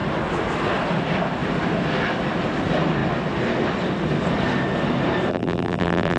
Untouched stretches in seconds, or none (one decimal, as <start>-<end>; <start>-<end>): 0.0-5.3